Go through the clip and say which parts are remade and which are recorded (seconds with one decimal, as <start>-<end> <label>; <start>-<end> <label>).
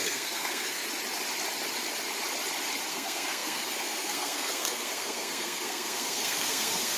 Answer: 0.0-0.8 remade; 0.8-2.9 recorded; 2.9-7.0 remade